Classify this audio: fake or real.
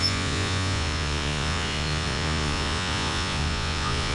fake